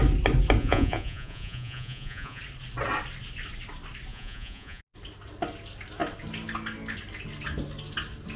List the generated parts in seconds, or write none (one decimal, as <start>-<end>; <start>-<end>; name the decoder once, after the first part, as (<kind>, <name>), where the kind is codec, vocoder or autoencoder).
0.6-2.4 (vocoder, Vocos); 4.1-4.8